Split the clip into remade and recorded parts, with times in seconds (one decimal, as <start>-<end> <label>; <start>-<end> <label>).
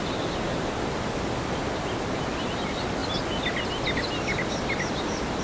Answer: 0.0-5.4 recorded